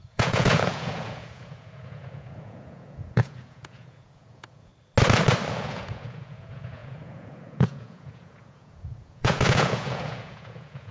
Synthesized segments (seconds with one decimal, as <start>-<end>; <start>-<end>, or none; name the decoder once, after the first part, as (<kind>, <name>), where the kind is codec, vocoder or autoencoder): 0.0-4.7 (vocoder, Vocos); 5.5-10.9